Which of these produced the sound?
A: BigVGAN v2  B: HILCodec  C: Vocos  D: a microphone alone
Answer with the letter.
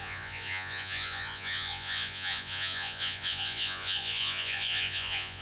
C